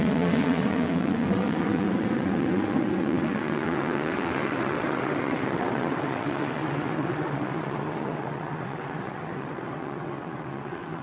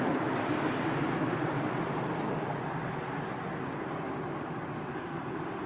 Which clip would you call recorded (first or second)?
second